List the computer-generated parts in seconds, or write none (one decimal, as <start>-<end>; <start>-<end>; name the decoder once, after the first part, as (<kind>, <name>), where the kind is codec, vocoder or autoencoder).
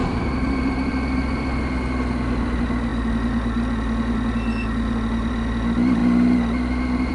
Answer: 0.0-0.9 (vocoder, BigVGAN v2)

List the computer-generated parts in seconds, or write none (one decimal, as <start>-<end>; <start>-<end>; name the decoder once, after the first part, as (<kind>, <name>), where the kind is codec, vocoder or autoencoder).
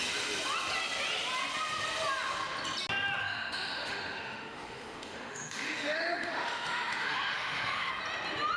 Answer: 3.2-7.9 (autoencoder, DAC-VAE)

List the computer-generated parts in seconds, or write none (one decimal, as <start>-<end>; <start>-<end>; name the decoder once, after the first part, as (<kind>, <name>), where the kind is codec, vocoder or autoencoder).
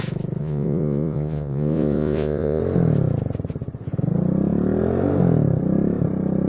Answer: 0.4-2.6 (vocoder, Vocos)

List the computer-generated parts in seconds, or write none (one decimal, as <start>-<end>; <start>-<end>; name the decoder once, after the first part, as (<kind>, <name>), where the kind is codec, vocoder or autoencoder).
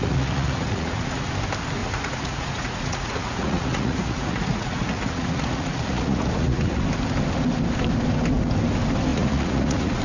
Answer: 0.0-1.3 (vocoder, Vocos); 1.8-6.8; 9.1-10.0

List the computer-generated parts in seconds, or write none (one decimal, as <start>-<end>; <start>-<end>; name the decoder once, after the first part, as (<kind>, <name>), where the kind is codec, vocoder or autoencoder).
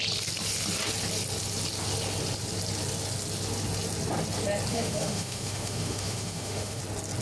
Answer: 4.7-6.8 (autoencoder, DAC-VAE)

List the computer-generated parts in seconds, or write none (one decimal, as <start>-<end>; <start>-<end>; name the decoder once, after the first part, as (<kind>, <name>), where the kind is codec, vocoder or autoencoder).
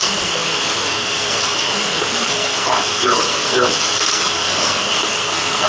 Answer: 0.0-5.7 (codec, SNAC)